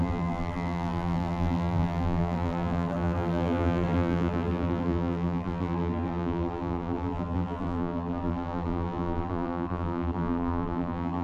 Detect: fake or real fake